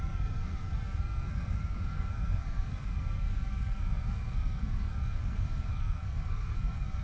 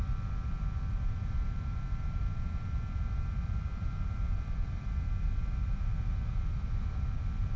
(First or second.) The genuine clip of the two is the second